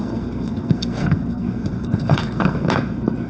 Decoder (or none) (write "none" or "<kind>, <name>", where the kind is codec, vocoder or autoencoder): codec, SNAC